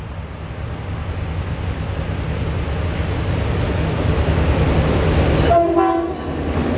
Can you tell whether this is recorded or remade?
recorded